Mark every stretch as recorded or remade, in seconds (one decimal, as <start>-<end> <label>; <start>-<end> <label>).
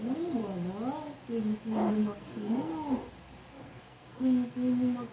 0.0-0.4 remade; 0.4-1.9 recorded; 1.9-2.7 remade; 2.7-3.5 recorded; 3.5-5.1 remade